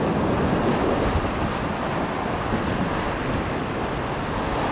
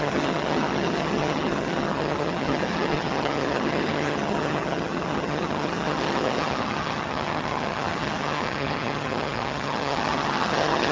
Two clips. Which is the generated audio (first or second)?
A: second